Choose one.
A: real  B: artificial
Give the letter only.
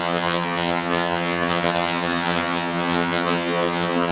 B